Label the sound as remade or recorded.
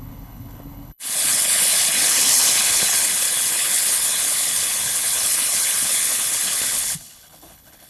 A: remade